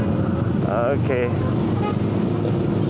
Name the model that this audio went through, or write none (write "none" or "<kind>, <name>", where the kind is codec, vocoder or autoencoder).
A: none